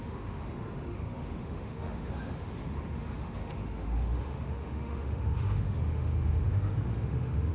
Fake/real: fake